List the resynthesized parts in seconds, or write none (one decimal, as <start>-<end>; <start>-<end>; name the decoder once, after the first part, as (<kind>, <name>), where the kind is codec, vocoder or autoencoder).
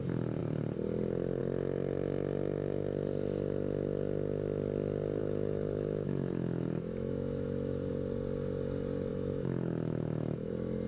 5.2-7.9 (autoencoder, DAC-VAE); 9.1-10.5